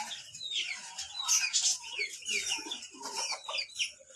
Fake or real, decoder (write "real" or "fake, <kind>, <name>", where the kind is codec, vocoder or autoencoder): real